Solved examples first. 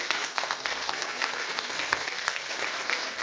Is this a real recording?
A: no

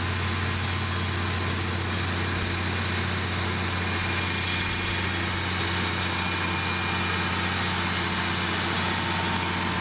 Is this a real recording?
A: yes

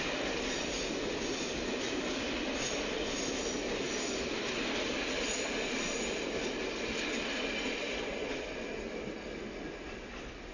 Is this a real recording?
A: yes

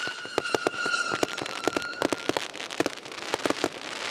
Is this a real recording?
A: yes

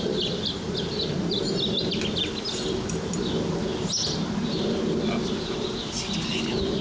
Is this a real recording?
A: yes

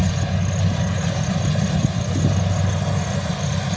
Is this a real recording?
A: yes